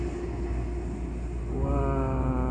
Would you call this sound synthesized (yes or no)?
no